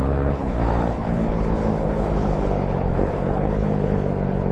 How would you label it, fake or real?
fake